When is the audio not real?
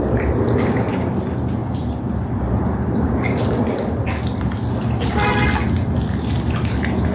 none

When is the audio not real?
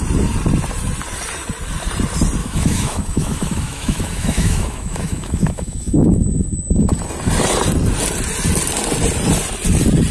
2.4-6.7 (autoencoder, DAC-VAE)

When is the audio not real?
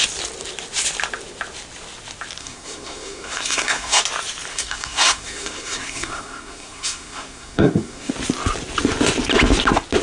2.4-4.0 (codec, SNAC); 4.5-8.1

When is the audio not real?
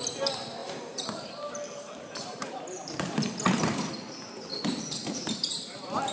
0.6-3.9 (vocoder, BigVGAN v2); 5.0-5.6